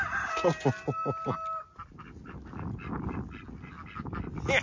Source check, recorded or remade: recorded